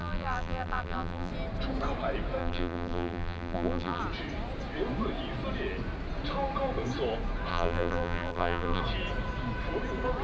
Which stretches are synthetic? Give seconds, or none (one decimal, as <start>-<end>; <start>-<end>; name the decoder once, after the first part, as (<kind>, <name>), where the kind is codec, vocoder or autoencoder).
0.0-1.3 (vocoder, BigVGAN v2); 2.4-4.0; 7.5-8.8